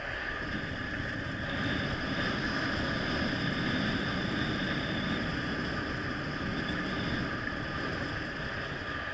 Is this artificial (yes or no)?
no